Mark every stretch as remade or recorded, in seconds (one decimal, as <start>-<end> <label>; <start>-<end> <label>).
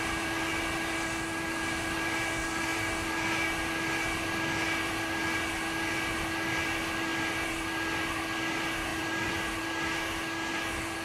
0.0-8.9 recorded; 8.9-9.5 remade; 9.5-11.0 recorded